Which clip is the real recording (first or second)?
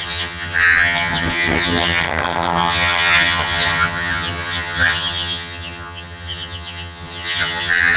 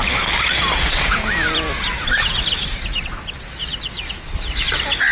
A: second